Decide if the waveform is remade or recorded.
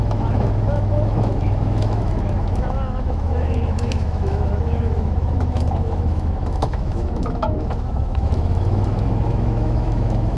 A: remade